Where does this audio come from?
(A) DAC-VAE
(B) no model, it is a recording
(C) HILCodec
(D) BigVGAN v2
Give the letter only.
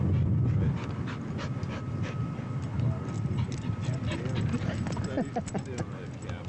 B